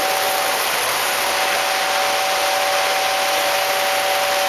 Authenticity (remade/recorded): recorded